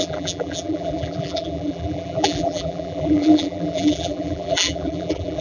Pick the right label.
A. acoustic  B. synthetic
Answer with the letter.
B